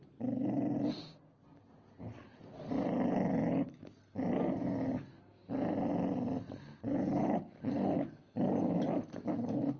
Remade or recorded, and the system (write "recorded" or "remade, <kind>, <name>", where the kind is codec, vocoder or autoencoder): recorded